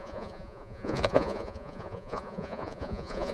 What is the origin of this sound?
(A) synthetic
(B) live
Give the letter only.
A